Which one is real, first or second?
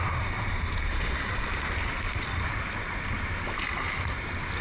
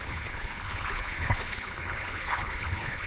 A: first